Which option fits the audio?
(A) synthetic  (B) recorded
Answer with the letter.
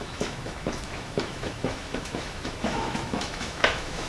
A